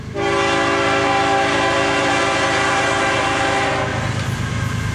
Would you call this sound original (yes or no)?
yes